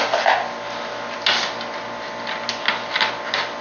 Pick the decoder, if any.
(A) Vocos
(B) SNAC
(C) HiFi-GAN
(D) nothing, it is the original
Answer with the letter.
D